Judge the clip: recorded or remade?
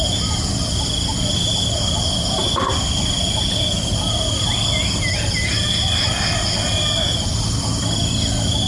recorded